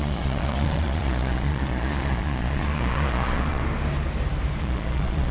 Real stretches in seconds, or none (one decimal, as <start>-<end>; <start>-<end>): 3.6-4.6